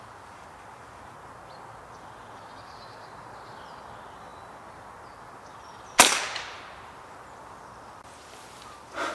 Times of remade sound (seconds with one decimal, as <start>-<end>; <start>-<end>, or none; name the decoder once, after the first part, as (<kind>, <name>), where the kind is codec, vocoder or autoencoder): none